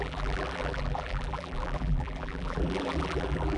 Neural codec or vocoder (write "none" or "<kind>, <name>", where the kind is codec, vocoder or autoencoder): vocoder, BigVGAN v2